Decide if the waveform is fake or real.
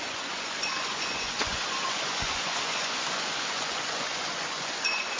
fake